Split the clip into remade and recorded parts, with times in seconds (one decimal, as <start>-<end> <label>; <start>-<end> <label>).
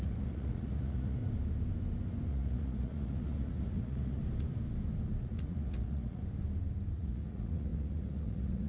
0.0-1.2 remade; 1.2-2.3 recorded; 2.3-4.2 remade; 4.2-5.2 recorded; 5.2-6.2 remade; 6.2-7.0 recorded; 7.0-8.7 remade